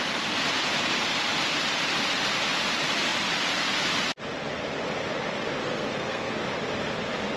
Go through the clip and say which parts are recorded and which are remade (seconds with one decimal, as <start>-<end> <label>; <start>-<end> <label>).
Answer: 0.0-5.6 recorded; 5.6-6.4 remade; 6.4-7.4 recorded